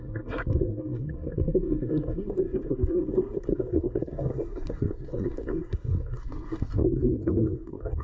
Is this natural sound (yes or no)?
no